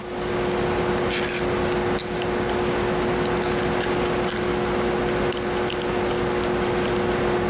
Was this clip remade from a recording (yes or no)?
no